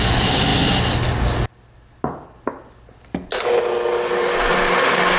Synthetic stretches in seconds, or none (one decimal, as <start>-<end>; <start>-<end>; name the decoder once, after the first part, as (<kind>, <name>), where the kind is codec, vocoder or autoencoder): none